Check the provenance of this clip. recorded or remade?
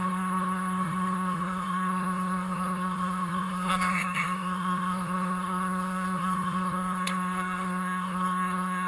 remade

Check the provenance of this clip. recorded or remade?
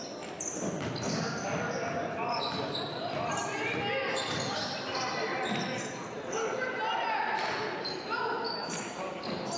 recorded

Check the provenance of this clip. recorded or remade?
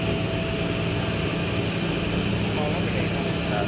recorded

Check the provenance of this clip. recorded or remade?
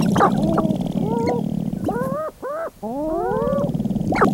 recorded